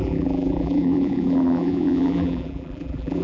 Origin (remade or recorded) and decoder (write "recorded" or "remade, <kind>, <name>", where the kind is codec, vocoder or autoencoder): remade, vocoder, BigVGAN v2